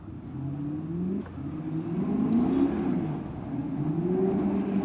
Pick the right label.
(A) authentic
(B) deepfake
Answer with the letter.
A